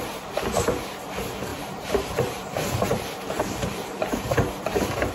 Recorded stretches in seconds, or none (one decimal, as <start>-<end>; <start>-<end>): 0.0-1.5; 4.6-5.1